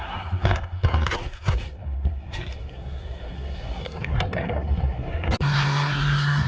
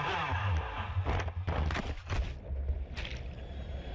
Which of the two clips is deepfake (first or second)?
first